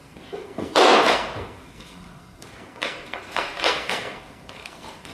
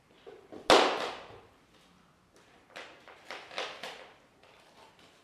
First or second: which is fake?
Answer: first